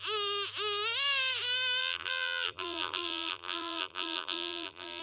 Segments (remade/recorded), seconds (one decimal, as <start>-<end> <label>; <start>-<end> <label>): 0.0-1.8 recorded; 1.8-5.0 remade